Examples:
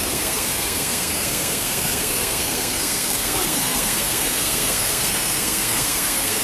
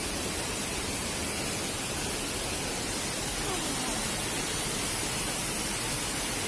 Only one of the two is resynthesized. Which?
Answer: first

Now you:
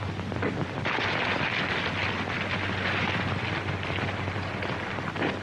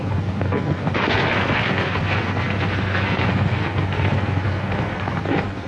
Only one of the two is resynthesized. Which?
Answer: second